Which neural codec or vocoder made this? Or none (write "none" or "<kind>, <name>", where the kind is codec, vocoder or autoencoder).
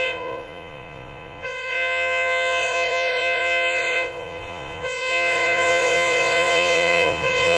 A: vocoder, Vocos